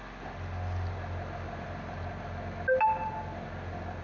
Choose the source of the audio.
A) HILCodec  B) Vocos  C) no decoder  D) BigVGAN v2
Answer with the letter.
C